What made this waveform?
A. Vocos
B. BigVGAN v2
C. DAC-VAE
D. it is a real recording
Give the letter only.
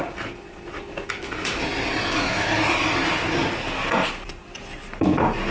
D